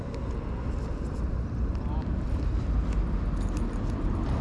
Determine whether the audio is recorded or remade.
recorded